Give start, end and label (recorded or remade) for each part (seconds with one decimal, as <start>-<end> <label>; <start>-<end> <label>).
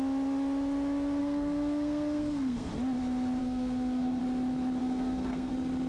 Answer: 0.0-1.2 recorded; 1.2-2.7 remade; 2.7-3.4 recorded; 3.4-4.2 remade; 4.2-4.8 recorded; 4.8-5.5 remade; 5.5-5.9 recorded